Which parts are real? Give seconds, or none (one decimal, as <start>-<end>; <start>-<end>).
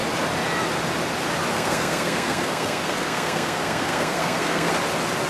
0.0-1.5; 4.7-5.3